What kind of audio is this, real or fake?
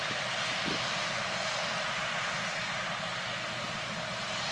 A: real